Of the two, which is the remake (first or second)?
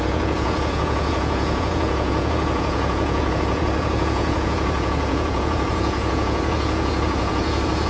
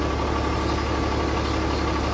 first